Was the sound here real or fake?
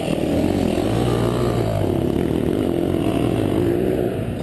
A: real